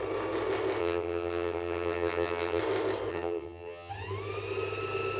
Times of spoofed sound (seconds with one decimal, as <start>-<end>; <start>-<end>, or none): 0.8-2.6; 3.1-3.9